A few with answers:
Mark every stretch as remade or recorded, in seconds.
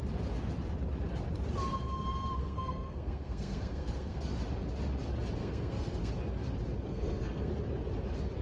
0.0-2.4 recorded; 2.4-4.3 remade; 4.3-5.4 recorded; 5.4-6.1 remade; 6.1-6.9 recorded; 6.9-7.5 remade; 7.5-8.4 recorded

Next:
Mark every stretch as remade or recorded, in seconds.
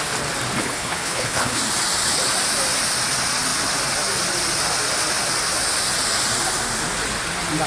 0.0-0.6 recorded; 0.6-1.6 remade; 1.6-7.7 recorded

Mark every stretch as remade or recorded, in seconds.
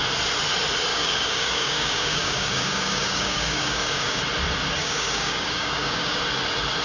0.0-0.9 recorded; 0.9-4.2 remade; 4.2-4.8 recorded; 4.8-6.2 remade; 6.2-6.8 recorded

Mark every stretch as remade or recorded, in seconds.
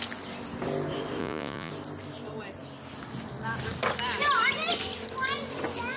0.0-1.2 recorded; 1.2-1.7 remade; 1.7-6.0 recorded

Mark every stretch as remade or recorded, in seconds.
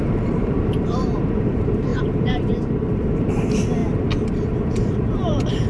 0.0-3.8 remade; 3.8-4.3 recorded; 4.3-5.7 remade